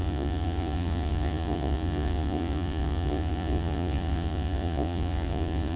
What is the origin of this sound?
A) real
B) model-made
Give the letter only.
B